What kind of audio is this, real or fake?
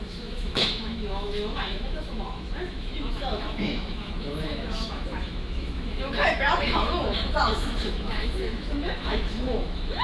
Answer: fake